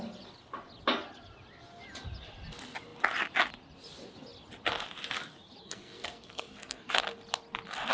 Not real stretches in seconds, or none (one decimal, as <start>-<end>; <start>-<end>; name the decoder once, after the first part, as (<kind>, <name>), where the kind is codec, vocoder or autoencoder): 5.6-6.9 (codec, SNAC)